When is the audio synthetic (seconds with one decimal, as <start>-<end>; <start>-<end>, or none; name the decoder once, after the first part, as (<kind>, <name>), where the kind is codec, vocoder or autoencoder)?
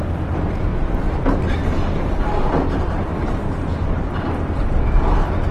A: none